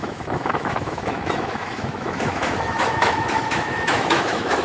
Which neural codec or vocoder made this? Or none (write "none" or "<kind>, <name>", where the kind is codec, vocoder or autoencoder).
autoencoder, DAC-VAE